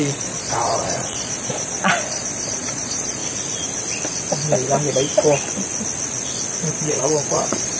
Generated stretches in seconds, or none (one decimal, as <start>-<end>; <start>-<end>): 0.0-3.2; 6.7-7.8